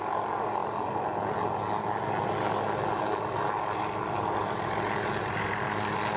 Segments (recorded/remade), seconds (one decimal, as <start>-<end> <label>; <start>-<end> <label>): 0.0-6.2 recorded